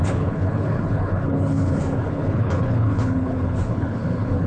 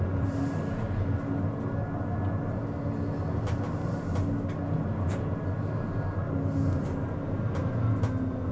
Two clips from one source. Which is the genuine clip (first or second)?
second